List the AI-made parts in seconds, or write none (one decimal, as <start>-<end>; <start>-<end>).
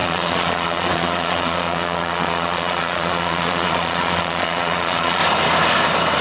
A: 0.0-5.2